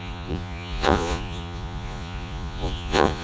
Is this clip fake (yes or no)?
yes